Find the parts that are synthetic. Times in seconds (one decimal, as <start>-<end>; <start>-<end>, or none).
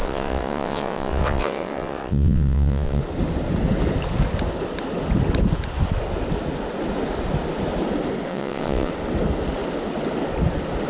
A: 0.0-3.0; 8.3-8.9